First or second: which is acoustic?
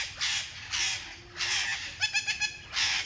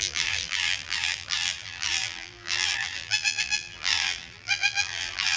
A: first